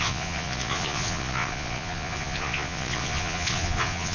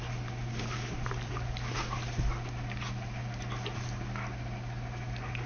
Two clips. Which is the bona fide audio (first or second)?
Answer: second